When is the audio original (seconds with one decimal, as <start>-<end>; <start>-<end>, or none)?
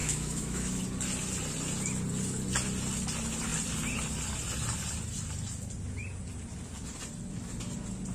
0.8-8.1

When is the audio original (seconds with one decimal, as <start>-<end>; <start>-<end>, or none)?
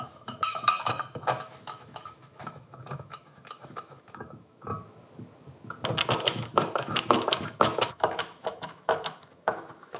4.7-6.1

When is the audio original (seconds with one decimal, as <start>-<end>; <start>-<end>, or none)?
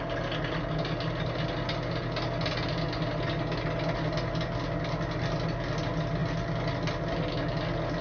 0.0-8.0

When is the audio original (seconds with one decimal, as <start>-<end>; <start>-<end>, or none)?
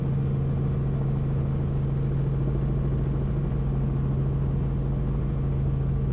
0.0-6.1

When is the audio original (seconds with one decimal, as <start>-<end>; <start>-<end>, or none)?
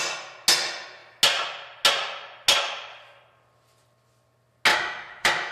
0.0-4.7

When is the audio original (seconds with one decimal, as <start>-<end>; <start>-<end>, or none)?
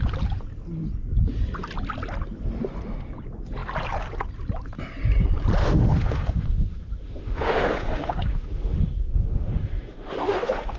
0.0-5.6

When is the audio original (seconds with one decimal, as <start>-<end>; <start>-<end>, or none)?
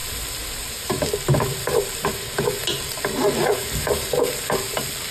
0.0-5.1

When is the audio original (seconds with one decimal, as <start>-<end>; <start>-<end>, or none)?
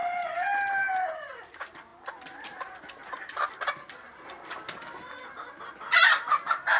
0.0-6.8